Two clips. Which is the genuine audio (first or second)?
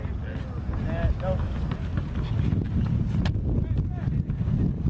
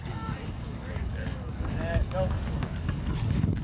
first